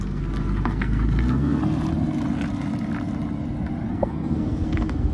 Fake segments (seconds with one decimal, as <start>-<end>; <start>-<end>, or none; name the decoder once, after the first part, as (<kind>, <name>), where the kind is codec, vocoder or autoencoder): 0.0-1.6 (codec, SNAC); 3.9-5.1